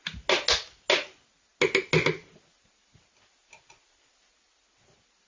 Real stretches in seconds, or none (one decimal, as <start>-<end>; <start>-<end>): 0.0-5.3